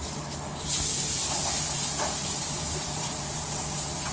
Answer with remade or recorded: remade